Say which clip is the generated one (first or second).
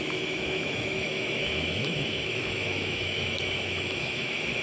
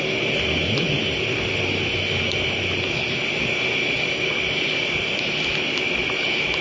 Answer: first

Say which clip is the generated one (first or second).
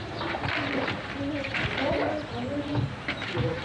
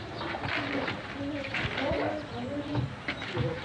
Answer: first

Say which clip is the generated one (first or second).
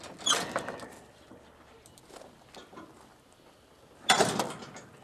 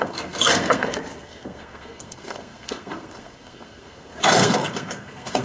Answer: second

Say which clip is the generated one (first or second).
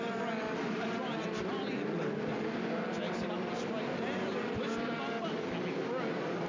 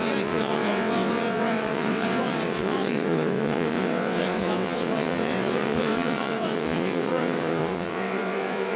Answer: second